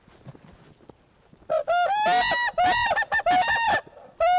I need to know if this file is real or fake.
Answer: real